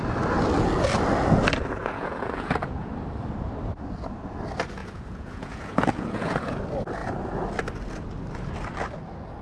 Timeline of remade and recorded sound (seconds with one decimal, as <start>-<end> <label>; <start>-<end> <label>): 0.0-1.8 recorded; 1.8-2.9 remade; 2.9-4.8 recorded; 4.8-6.6 remade; 6.6-9.4 recorded